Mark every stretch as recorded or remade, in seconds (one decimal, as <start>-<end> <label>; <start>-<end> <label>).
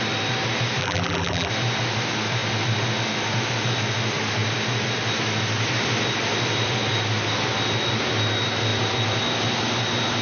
0.0-0.8 recorded; 0.8-1.5 remade; 1.5-10.2 recorded